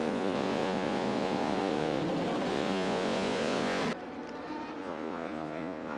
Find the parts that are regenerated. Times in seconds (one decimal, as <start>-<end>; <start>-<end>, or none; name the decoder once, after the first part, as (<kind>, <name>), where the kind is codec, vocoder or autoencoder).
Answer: 0.0-2.0 (vocoder, Vocos); 2.5-3.8; 4.8-6.0